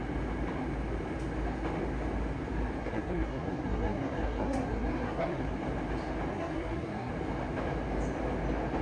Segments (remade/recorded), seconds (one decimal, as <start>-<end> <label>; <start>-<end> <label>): 0.0-2.8 recorded; 2.8-5.5 remade; 5.5-6.3 recorded; 6.3-7.1 remade; 7.1-8.8 recorded